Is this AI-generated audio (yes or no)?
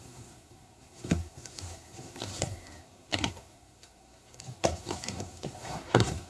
yes